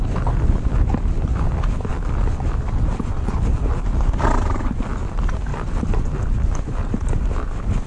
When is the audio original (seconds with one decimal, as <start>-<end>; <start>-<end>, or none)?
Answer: 0.0-1.9; 2.6-5.5; 6.0-7.9